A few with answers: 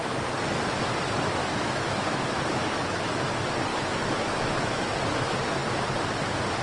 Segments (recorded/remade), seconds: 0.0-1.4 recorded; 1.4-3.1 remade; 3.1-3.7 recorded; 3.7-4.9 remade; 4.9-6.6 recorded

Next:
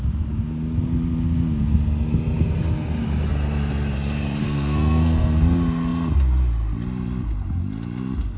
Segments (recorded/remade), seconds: 0.0-4.4 recorded; 4.4-5.4 remade; 5.4-8.4 recorded

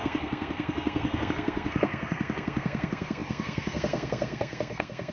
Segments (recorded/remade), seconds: 0.0-5.1 remade

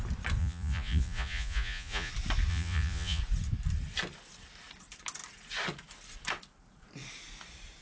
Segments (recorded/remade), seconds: 0.0-0.4 recorded; 0.4-2.1 remade; 2.1-2.5 recorded; 2.5-3.2 remade; 3.2-7.8 recorded